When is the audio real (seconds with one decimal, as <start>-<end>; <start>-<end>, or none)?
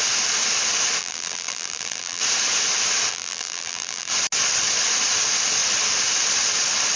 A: 0.0-1.0; 2.2-3.1; 4.1-7.0